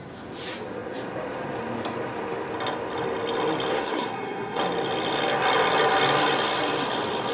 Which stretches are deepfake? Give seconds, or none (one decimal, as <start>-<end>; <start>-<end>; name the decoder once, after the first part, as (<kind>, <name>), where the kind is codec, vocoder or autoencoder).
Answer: 3.7-4.6 (codec, SNAC)